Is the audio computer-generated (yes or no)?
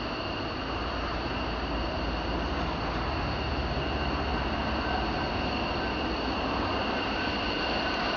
no